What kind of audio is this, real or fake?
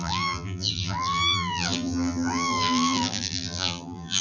fake